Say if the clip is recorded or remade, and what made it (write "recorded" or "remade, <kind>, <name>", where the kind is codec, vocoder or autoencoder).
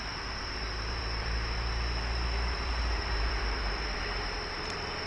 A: remade, vocoder, BigVGAN v2